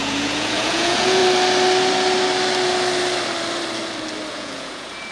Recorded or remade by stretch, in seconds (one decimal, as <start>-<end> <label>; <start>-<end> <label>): 0.0-1.2 remade; 1.2-4.3 recorded; 4.3-5.1 remade